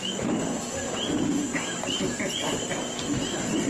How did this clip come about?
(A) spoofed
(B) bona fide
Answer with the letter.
B